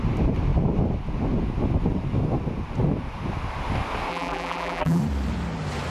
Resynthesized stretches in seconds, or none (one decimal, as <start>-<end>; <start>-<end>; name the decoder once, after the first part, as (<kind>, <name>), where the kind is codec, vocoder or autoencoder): 4.1-5.0 (vocoder, BigVGAN v2)